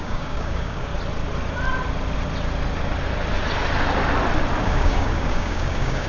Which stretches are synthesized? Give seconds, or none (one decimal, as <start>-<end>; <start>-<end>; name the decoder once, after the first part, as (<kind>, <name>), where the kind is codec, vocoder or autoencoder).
0.0-0.9 (codec, DAC); 4.6-6.1

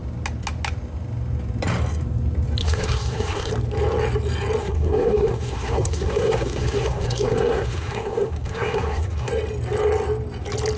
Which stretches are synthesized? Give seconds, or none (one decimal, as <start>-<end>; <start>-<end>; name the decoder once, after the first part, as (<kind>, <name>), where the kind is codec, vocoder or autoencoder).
2.6-3.5 (codec, SNAC); 4.6-9.3

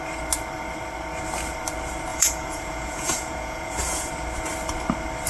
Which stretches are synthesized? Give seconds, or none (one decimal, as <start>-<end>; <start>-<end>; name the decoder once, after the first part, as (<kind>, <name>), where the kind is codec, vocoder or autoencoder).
2.1-4.1 (vocoder, Vocos)

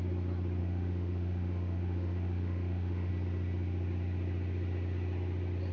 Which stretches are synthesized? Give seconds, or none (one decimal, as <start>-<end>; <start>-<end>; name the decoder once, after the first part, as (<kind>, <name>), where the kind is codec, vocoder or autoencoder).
0.6-3.1 (autoencoder, DAC-VAE)

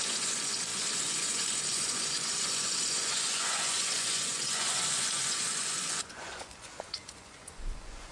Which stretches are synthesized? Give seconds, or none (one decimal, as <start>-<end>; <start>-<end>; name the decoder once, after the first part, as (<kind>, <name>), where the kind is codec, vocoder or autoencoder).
0.0-8.1 (vocoder, Vocos)

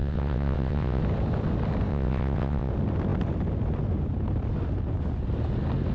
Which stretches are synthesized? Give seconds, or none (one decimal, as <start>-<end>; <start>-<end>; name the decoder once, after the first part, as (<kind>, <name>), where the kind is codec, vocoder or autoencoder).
0.0-1.0 (vocoder, WaveNeXt); 1.9-2.7

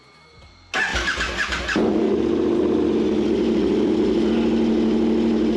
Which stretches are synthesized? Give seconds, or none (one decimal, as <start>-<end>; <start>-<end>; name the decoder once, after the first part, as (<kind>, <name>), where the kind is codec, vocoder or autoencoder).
0.9-4.3 (vocoder, BigVGAN v2)

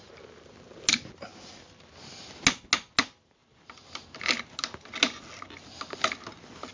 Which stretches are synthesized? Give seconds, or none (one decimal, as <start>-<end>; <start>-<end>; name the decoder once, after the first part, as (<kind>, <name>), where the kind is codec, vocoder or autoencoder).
none